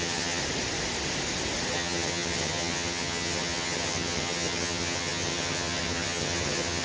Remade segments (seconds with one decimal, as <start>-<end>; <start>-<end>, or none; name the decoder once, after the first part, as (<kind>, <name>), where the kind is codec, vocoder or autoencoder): 0.0-0.4 (vocoder, HiFi-GAN); 1.7-6.8